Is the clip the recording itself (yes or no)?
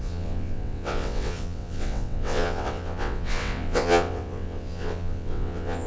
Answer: no